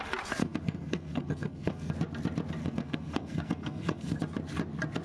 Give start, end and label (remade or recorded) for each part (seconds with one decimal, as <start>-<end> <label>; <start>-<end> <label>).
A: 0.0-0.4 recorded; 0.4-1.9 remade; 1.9-2.6 recorded; 2.6-4.2 remade; 4.2-5.0 recorded

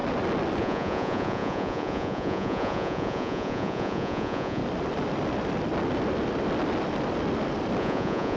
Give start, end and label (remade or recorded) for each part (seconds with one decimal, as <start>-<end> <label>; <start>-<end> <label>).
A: 0.0-0.6 recorded; 0.6-4.6 remade; 4.6-7.8 recorded; 7.8-8.4 remade